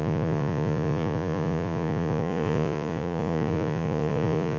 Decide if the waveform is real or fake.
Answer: fake